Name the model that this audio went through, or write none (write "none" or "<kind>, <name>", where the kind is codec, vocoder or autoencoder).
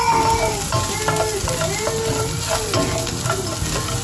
none